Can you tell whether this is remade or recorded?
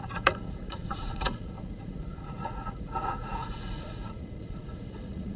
remade